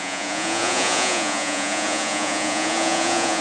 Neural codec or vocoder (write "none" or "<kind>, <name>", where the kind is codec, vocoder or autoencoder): vocoder, Vocos